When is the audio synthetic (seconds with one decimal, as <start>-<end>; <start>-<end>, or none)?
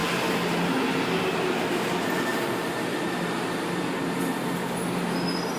none